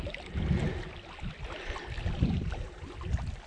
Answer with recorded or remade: recorded